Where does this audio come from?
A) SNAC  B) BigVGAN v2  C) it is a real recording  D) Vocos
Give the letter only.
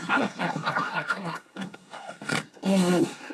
A